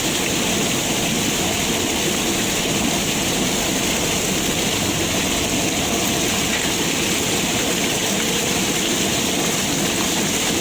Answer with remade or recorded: recorded